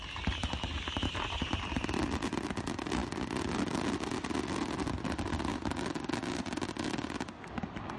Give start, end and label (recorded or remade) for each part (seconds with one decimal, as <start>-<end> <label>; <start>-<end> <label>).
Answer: 0.0-3.0 remade; 3.0-5.0 recorded; 5.0-5.5 remade; 5.5-6.3 recorded; 6.3-8.0 remade